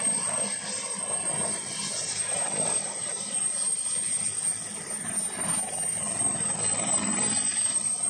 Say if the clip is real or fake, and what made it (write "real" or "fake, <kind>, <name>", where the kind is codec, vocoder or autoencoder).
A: real